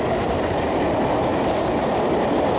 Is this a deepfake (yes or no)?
yes